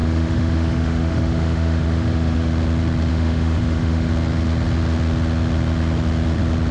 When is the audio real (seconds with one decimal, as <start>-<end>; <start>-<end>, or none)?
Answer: 2.5-3.1; 4.1-6.7